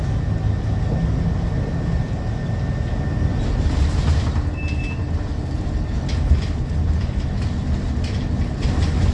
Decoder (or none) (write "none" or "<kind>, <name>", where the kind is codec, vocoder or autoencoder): none